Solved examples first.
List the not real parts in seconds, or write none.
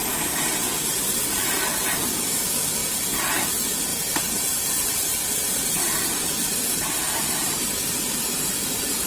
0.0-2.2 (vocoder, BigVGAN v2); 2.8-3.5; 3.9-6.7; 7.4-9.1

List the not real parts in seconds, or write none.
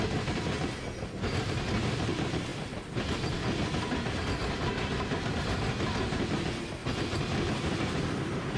2.5-3.9 (vocoder, BigVGAN v2); 6.8-7.8